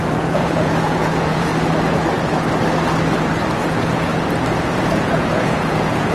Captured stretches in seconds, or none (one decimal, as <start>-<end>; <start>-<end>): 1.5-3.6; 4.1-4.6